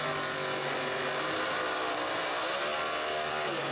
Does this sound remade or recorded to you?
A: recorded